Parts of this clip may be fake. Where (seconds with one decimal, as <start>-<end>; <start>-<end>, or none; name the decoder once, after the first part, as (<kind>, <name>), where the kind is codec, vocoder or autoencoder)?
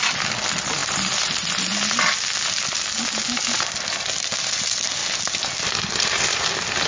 none